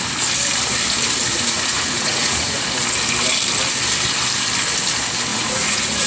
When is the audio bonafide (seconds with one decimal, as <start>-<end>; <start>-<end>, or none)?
0.0-1.3; 2.6-5.3